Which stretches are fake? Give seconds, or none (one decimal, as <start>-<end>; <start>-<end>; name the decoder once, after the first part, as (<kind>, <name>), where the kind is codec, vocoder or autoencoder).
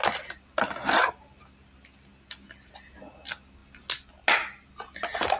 none